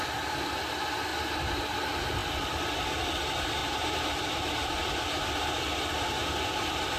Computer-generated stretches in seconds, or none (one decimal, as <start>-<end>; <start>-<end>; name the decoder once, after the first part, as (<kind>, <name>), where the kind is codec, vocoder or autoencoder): 1.1-1.7 (vocoder, BigVGAN v2); 3.6-4.3